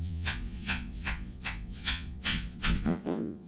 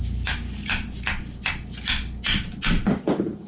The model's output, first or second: first